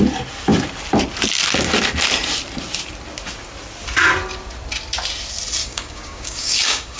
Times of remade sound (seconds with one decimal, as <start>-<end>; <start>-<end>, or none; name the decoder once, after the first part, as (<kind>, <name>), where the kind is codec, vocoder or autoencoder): 5.6-7.0 (codec, DAC)